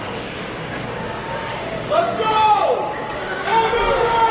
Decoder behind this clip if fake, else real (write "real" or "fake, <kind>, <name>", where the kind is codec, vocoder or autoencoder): fake, codec, DAC